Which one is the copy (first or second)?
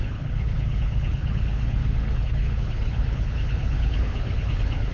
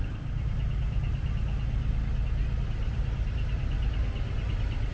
first